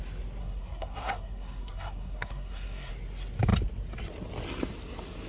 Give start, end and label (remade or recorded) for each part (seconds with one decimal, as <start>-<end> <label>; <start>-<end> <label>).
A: 0.0-0.4 recorded; 0.4-2.9 remade; 2.9-5.3 recorded